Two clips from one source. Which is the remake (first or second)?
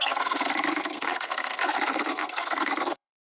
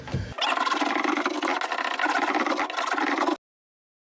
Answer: first